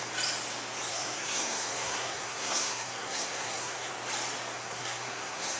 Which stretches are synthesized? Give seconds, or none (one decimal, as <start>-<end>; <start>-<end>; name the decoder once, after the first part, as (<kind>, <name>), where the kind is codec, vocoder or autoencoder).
0.9-3.9 (codec, SNAC); 4.6-5.6